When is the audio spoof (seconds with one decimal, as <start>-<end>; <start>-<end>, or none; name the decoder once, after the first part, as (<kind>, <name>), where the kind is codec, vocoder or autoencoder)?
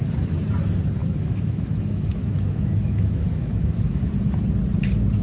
1.0-4.1 (autoencoder, DAC-VAE)